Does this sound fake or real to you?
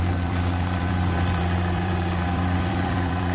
fake